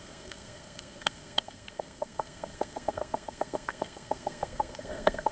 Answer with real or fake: fake